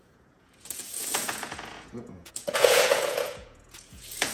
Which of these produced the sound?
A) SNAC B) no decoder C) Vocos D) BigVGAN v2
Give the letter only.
C